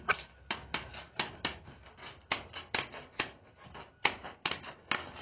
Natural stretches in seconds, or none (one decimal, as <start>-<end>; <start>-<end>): 0.0-5.2